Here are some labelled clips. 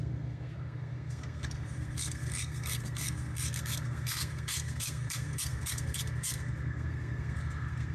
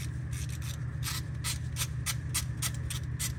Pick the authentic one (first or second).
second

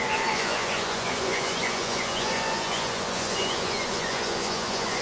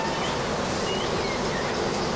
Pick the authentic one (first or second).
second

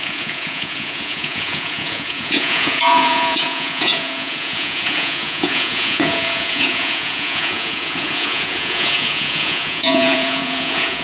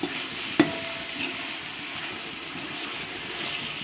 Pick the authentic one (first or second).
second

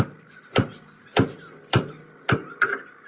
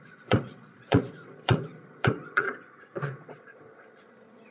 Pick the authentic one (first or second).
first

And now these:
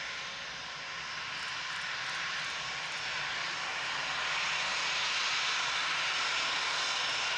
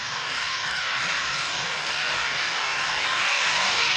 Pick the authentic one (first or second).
first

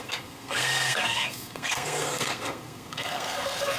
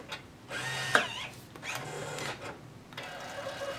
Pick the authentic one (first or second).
second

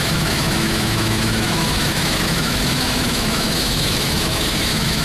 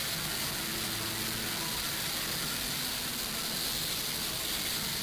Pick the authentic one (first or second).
second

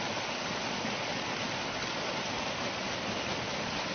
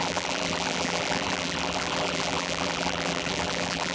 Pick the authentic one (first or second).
first